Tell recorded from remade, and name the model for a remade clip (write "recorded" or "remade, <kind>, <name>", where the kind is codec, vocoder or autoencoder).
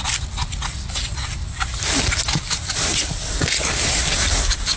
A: recorded